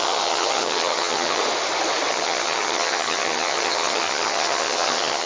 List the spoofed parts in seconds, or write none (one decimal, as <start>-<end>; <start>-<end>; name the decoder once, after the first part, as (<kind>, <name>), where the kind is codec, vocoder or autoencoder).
0.0-1.4 (vocoder, HiFi-GAN); 2.1-5.3